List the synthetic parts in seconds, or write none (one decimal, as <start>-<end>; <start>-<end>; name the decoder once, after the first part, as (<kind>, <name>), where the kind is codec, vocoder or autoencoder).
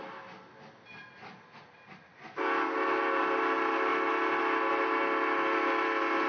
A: none